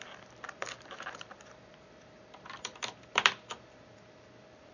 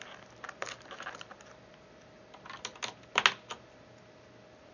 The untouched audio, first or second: second